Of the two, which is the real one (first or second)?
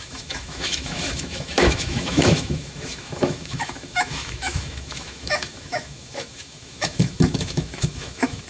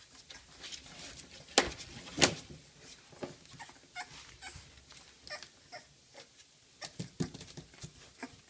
second